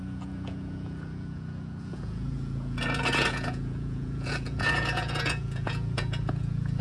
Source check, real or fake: fake